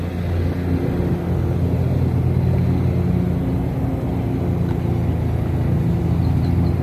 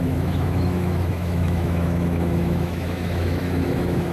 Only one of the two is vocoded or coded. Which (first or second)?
second